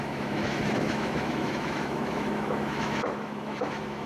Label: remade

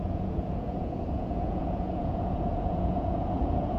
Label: remade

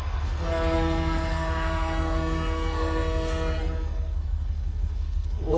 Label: remade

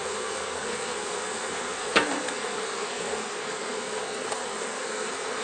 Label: remade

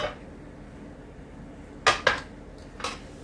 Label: recorded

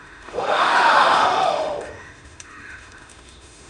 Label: remade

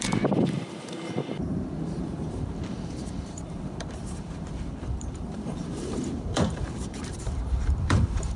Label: remade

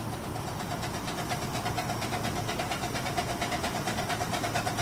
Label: recorded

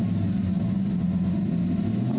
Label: recorded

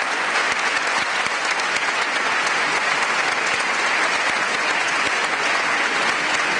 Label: remade